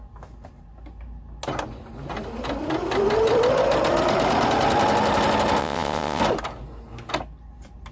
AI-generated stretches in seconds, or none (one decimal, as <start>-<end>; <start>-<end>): 5.6-6.2